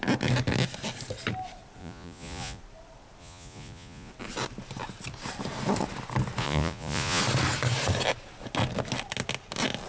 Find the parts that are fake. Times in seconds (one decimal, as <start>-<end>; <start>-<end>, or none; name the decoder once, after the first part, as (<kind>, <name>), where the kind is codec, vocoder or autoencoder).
1.8-2.6 (vocoder, Vocos); 3.2-4.1; 6.4-7.2